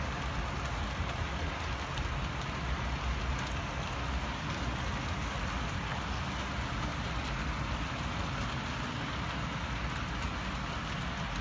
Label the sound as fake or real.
real